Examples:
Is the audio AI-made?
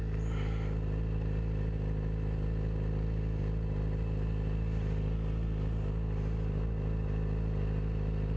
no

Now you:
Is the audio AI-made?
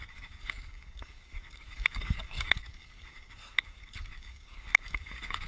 yes